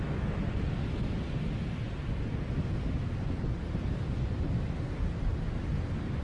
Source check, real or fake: real